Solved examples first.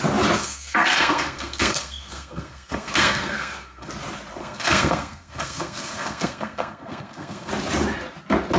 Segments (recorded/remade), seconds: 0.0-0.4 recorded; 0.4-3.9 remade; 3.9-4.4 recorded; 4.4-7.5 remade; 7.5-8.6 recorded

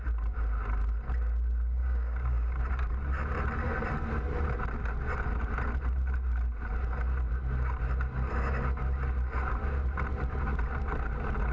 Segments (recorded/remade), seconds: 0.0-1.8 recorded; 1.8-2.6 remade; 2.6-11.5 recorded

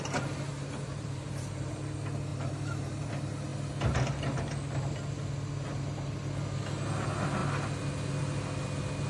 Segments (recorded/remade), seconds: 0.0-0.5 recorded; 0.5-1.7 remade; 1.7-2.3 recorded; 2.3-3.1 remade; 3.1-9.1 recorded

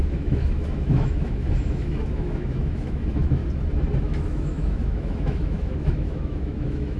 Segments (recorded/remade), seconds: 0.0-3.4 remade; 3.4-4.0 recorded; 4.0-7.0 remade

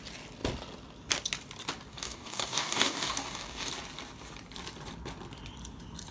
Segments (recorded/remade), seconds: 0.0-1.9 recorded; 1.9-3.7 remade; 3.7-6.1 recorded

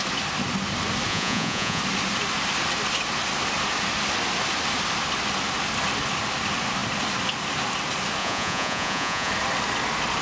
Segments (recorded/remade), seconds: 0.0-1.1 recorded; 1.1-1.8 remade; 1.8-8.2 recorded; 8.2-9.3 remade; 9.3-10.2 recorded